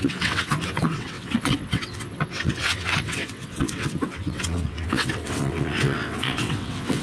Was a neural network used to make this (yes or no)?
yes